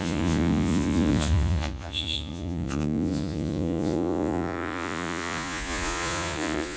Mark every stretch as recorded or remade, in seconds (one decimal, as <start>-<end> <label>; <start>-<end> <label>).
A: 0.0-6.8 remade